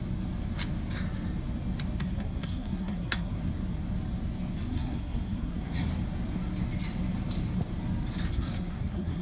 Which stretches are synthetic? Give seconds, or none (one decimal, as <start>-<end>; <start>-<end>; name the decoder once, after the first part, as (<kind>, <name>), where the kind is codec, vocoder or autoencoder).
2.0-3.4 (codec, SNAC); 4.7-5.9; 8.3-9.2